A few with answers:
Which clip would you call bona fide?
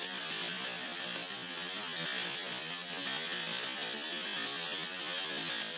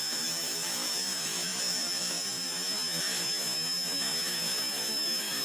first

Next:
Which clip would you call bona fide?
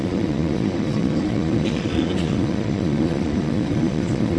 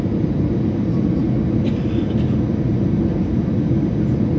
second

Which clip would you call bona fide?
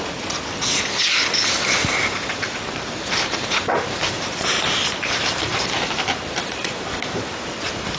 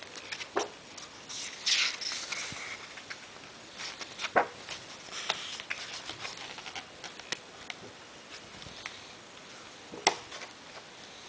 second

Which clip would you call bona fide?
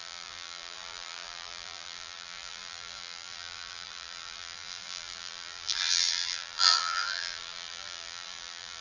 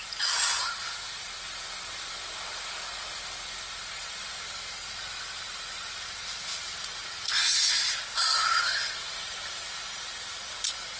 second